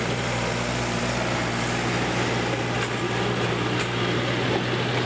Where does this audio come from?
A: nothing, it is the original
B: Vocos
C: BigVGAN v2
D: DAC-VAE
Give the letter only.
A